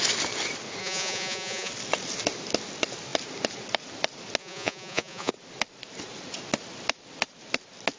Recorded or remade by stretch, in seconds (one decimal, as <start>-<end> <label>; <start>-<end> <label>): 0.0-0.8 recorded; 0.8-1.7 remade; 1.7-4.4 recorded; 4.4-5.3 remade; 5.3-8.0 recorded